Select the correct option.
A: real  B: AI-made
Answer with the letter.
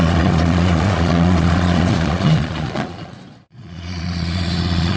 B